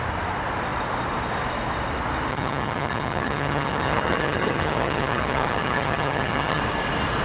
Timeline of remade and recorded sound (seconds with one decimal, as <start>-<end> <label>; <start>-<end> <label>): 0.0-2.3 recorded; 2.3-6.6 remade; 6.6-7.2 recorded